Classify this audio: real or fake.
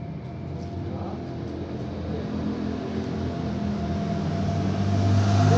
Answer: real